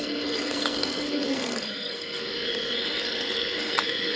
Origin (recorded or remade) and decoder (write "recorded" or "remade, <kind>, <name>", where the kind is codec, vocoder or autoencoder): remade, codec, SNAC